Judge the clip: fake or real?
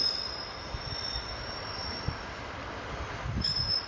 real